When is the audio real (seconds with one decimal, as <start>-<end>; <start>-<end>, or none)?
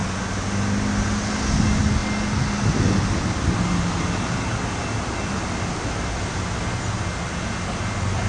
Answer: 0.0-8.3